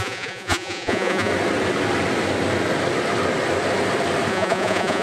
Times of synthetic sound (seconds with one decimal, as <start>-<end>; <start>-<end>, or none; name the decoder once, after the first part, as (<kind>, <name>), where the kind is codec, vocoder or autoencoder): 0.0-1.3 (vocoder, Vocos); 4.3-5.0